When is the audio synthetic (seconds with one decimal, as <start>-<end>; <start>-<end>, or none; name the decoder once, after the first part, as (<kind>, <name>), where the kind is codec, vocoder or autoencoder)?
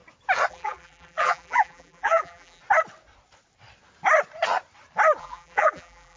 0.5-2.6 (vocoder, BigVGAN v2); 5.2-6.2